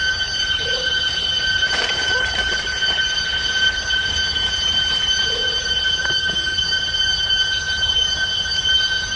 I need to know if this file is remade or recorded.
remade